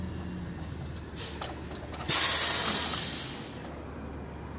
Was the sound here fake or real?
real